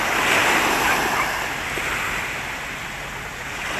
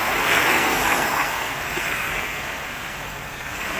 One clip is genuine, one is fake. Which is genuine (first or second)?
first